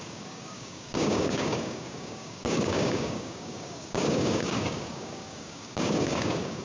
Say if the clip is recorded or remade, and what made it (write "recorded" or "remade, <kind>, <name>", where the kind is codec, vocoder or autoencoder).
remade, codec, DAC